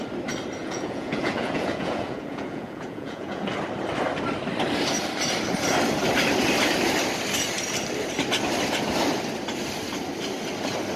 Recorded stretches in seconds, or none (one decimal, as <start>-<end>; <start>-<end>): 0.0-0.6; 3.6-11.0